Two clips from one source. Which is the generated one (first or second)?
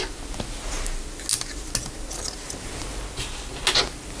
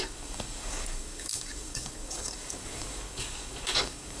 second